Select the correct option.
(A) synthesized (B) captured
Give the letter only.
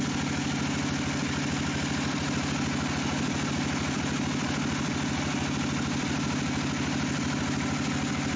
B